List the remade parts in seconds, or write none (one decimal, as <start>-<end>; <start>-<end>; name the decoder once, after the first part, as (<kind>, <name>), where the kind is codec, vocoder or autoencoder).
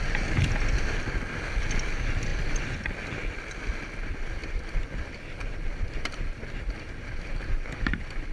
2.3-2.9 (vocoder, BigVGAN v2); 4.4-7.4